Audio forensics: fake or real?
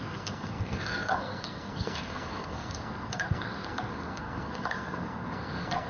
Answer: fake